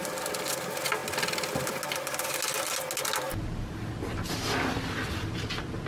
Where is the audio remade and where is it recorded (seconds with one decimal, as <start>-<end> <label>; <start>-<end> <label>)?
0.0-5.9 recorded